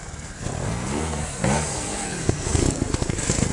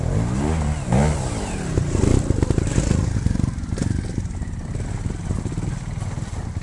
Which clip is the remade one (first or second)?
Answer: first